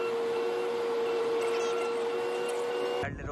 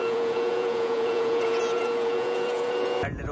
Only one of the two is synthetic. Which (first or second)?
second